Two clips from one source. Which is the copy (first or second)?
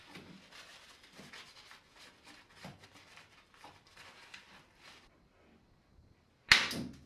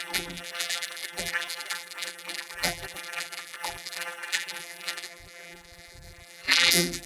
second